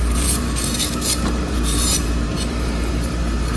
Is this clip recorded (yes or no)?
no